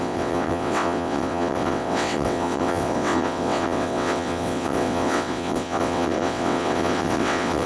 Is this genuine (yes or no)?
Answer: no